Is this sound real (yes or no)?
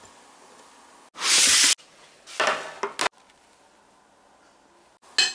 yes